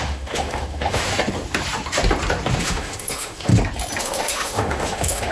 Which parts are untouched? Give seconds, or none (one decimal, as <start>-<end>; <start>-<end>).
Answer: 1.1-2.6; 3.5-4.0